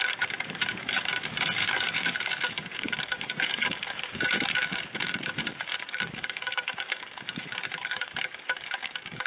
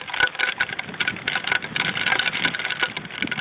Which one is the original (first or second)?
second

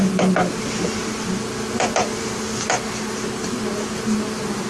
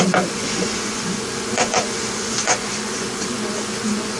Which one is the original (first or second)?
first